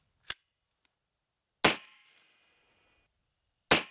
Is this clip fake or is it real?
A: real